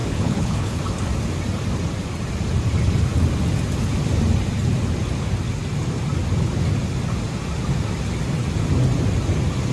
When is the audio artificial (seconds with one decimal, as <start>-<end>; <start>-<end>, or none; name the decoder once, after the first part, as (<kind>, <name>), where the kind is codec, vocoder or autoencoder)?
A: 0.0-0.8 (codec, HILCodec)